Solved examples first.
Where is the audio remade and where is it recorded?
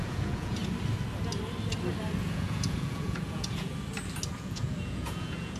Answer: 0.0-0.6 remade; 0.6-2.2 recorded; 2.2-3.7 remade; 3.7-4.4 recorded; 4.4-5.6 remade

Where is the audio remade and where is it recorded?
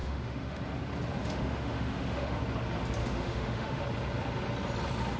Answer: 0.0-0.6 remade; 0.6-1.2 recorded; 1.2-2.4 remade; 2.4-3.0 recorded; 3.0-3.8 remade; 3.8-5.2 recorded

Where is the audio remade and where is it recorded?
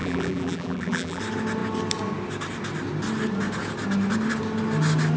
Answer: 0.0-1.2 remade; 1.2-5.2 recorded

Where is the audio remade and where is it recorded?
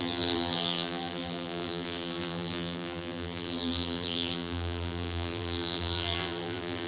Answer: 0.0-6.9 remade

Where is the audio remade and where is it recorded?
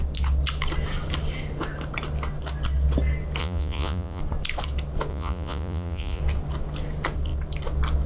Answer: 0.0-3.4 recorded; 3.4-4.2 remade; 4.2-5.1 recorded; 5.1-6.2 remade; 6.2-8.1 recorded